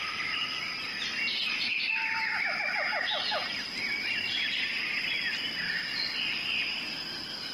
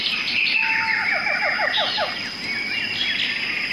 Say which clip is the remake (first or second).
first